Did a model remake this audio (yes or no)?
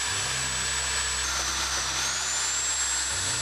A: no